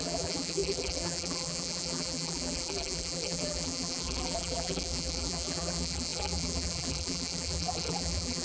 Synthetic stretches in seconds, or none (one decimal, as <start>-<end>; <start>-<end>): 0.0-8.4